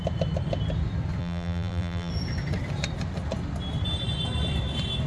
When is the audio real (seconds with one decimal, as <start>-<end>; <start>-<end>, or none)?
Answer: 0.0-1.2; 2.1-5.1